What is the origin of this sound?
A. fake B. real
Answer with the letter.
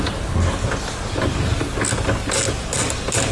B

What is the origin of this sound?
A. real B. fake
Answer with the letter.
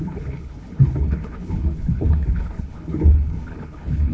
B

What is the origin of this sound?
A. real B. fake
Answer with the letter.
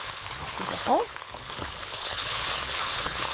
B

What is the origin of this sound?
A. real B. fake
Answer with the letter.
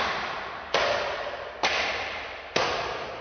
A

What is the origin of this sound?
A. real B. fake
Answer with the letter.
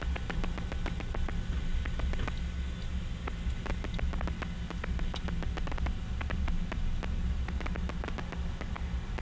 A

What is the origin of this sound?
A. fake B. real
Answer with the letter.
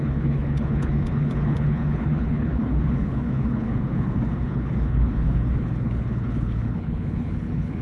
A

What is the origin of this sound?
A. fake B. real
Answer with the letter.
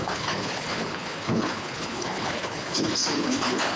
A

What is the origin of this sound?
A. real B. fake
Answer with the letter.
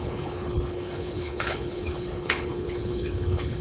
B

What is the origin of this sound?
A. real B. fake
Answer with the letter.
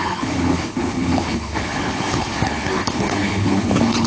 B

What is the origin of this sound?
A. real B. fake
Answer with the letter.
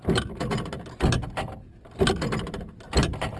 A